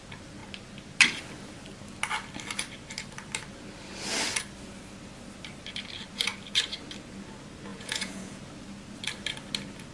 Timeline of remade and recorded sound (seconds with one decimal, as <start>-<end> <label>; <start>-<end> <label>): 0.0-7.7 recorded; 7.7-8.4 remade; 8.4-9.9 recorded

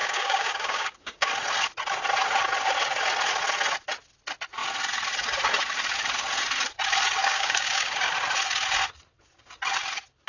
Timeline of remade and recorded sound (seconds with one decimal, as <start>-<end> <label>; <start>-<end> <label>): 0.0-1.3 remade; 1.3-7.2 recorded; 7.2-8.1 remade; 8.1-10.3 recorded

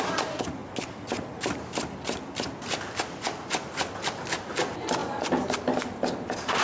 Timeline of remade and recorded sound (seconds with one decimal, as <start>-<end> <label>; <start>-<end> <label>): 0.0-6.6 recorded